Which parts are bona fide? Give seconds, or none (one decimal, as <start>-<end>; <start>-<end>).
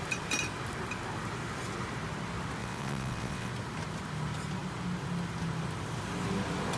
0.0-2.6; 3.5-6.8